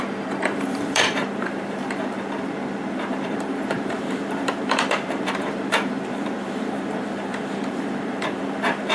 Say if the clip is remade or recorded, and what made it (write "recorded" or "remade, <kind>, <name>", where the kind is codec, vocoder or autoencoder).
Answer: remade, vocoder, BigVGAN v2